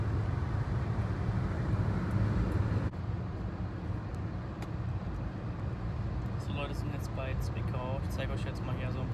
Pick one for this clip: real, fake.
real